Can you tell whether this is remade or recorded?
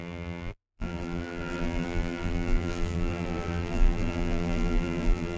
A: remade